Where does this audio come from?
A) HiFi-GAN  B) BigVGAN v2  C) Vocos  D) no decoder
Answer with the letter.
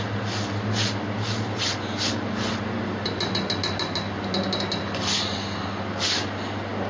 D